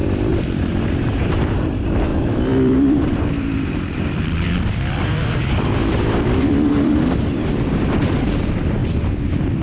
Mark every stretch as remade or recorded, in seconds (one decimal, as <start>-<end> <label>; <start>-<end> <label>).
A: 0.0-8.8 remade; 8.8-9.6 recorded